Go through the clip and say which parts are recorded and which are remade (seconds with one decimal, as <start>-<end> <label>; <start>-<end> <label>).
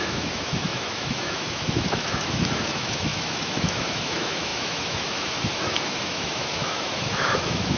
0.0-7.8 remade